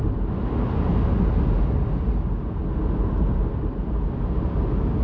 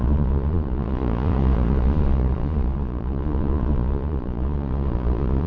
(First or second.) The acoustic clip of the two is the first